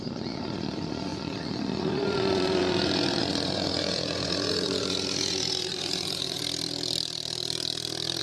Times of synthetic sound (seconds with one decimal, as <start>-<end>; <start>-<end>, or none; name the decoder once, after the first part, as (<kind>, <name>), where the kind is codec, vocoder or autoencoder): 0.0-6.4 (vocoder, Vocos)

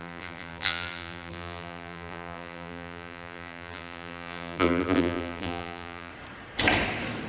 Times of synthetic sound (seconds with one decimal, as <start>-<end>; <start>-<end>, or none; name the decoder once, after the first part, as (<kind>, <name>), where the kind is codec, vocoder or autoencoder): 0.0-6.1 (vocoder, BigVGAN v2)

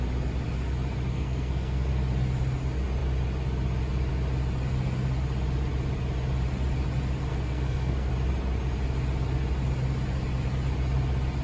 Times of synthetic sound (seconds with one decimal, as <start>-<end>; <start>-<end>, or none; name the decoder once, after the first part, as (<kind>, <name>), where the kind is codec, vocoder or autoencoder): 1.1-1.9 (codec, SNAC); 7.3-8.1

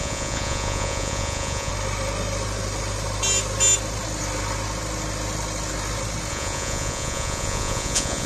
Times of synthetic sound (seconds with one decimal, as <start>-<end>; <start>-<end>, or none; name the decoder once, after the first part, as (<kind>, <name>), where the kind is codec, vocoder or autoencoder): 0.0-1.7 (vocoder, Vocos); 6.3-8.3